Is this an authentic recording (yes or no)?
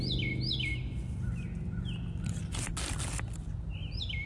yes